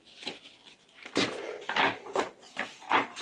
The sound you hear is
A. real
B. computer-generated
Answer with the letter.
A